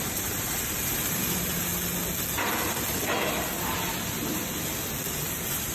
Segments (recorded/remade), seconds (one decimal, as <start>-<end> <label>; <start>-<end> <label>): 0.0-1.7 remade; 1.7-5.1 recorded; 5.1-5.7 remade